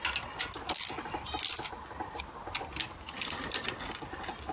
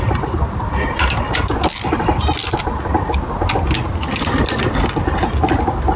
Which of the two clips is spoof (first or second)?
second